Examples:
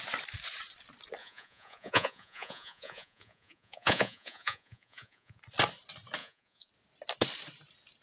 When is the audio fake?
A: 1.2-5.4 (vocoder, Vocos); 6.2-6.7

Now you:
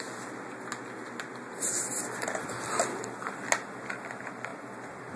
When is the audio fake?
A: none

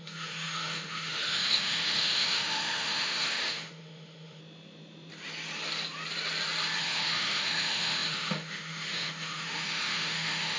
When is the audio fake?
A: 0.0-4.4 (autoencoder, DAC-VAE); 6.8-10.6

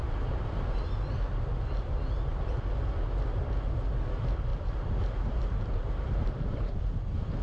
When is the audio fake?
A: 4.5-6.8 (vocoder, BigVGAN v2)

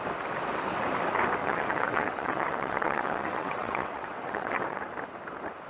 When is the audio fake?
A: 1.4-4.8 (vocoder, WaveNeXt)

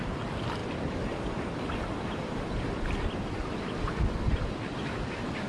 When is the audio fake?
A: none

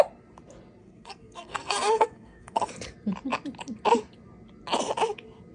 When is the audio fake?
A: 0.8-2.7 (codec, SNAC)

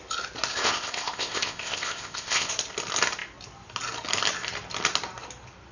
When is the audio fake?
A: 0.5-2.5 (codec, ZipCodec)